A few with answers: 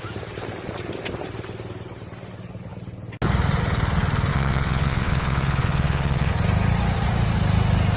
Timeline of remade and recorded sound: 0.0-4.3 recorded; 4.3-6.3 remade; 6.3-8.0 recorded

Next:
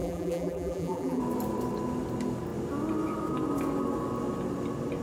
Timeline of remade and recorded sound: 0.0-1.2 remade; 1.2-5.0 recorded

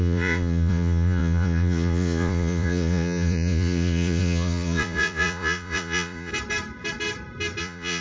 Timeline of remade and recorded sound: 0.0-6.3 remade; 6.3-7.6 recorded; 7.6-8.0 remade

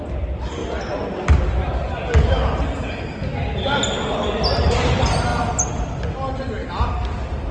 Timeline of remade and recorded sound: 0.0-7.5 recorded

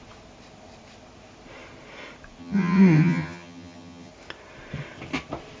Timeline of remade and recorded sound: 0.0-2.4 recorded; 2.4-4.1 remade; 4.1-5.6 recorded

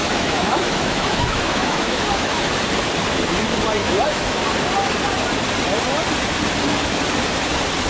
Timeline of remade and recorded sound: 0.0-2.5 remade; 2.5-3.8 recorded; 3.8-4.4 remade; 4.4-7.9 recorded

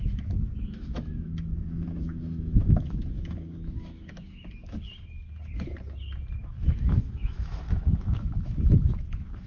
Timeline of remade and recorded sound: 0.0-4.9 remade; 4.9-6.4 recorded; 6.4-9.5 remade